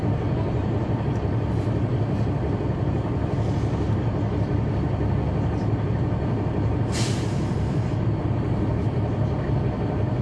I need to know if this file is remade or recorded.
recorded